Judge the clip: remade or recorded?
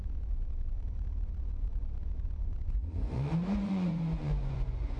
remade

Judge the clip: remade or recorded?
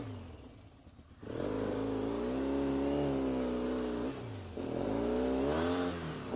recorded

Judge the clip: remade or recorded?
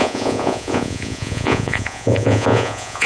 remade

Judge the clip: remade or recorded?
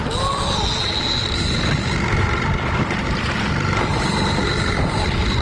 remade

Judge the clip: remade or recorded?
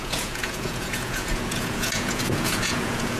remade